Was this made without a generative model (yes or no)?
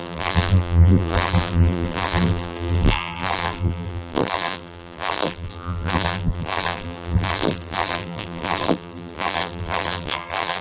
no